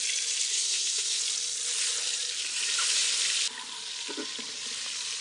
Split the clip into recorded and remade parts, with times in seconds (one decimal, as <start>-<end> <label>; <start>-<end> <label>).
0.0-0.5 recorded; 0.5-1.2 remade; 1.2-5.2 recorded

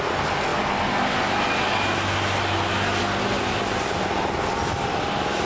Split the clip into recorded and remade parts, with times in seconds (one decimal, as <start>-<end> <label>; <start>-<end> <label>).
0.0-5.5 recorded

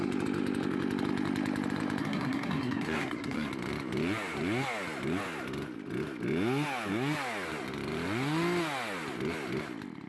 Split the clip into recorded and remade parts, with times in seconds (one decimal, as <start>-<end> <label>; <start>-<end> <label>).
0.0-2.0 recorded; 2.0-3.5 remade; 3.5-10.1 recorded

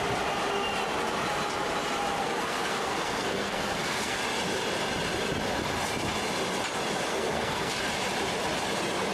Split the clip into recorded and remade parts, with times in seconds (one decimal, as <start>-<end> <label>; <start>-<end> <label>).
0.0-2.2 recorded; 2.2-4.2 remade; 4.2-7.1 recorded; 7.1-7.7 remade; 7.7-9.1 recorded

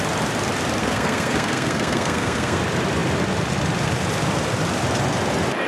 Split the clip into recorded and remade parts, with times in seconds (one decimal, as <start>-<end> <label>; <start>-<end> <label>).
0.0-0.8 recorded; 0.8-2.6 remade; 2.6-5.7 recorded

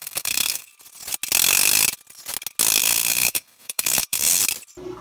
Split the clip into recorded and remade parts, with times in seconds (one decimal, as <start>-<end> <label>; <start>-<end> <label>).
0.0-0.7 remade; 0.7-2.8 recorded; 2.8-4.4 remade; 4.4-5.0 recorded